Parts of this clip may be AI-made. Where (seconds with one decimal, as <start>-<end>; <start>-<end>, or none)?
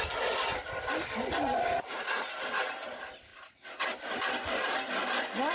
1.7-2.2